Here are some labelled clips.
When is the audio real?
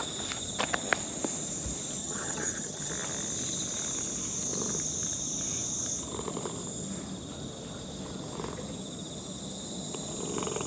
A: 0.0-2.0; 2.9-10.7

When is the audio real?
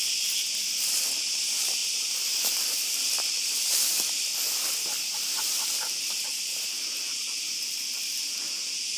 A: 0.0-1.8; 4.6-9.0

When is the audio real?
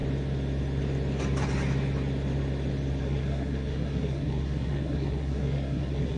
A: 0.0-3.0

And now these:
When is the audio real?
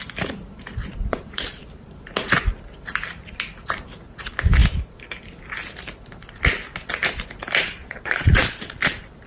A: 0.0-0.8; 1.8-7.8; 8.8-9.3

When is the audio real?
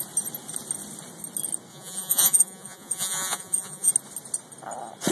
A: 0.0-1.7; 3.9-5.1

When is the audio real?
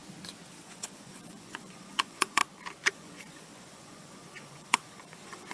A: 0.0-0.6; 2.4-2.9